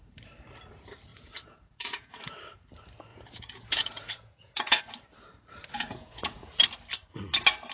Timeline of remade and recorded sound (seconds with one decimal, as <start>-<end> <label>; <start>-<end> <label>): 0.0-1.1 recorded; 1.1-2.2 remade; 2.2-3.1 recorded; 3.1-4.8 remade; 4.8-5.7 recorded; 5.7-6.6 remade; 6.6-7.7 recorded